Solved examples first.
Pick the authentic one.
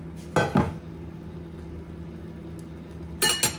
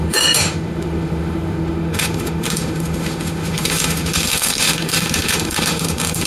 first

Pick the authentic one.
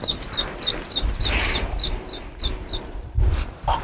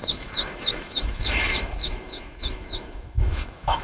first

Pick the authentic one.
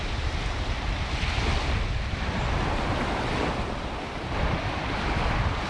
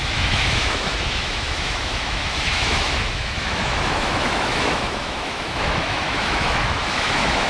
first